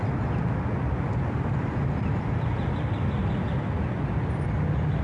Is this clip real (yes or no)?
yes